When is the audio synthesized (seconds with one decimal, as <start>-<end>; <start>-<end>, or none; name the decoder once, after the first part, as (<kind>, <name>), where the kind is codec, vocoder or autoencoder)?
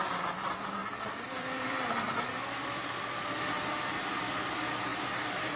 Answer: 0.8-4.0 (vocoder, BigVGAN v2); 4.9-5.6